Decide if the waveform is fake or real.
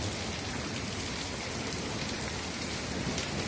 real